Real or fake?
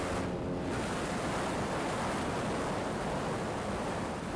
real